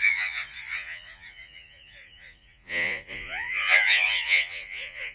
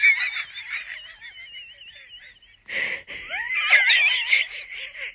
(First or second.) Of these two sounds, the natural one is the second